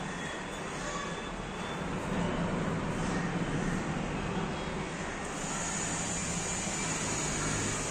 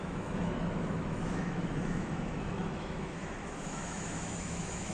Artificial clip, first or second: second